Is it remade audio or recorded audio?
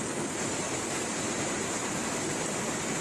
recorded